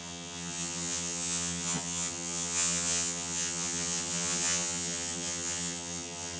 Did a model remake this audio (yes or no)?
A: yes